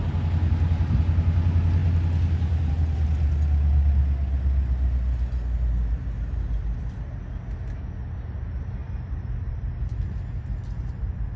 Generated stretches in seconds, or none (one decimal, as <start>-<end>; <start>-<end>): none